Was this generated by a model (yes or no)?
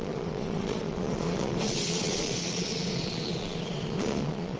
yes